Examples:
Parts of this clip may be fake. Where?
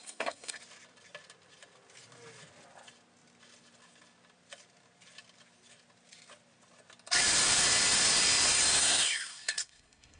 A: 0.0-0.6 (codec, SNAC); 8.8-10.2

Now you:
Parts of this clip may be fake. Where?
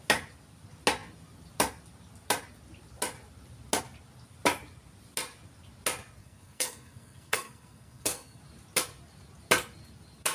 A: 6.2-8.4 (codec, SNAC)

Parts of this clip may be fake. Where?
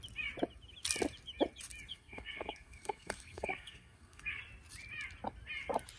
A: 1.9-4.4 (codec, SNAC)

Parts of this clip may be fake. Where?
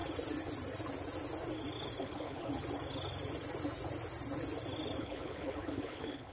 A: 2.0-2.5 (codec, HILCodec); 5.0-6.3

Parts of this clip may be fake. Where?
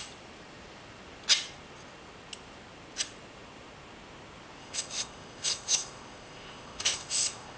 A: 4.6-7.6 (codec, ZipCodec)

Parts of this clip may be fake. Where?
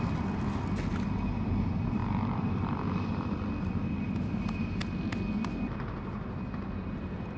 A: none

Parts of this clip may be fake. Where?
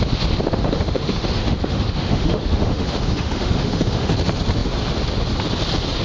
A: 0.5-4.1 (autoencoder, DAC-VAE)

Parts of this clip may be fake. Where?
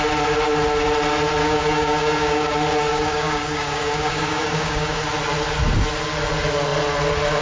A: 1.4-2.5 (codec, DAC); 2.9-5.0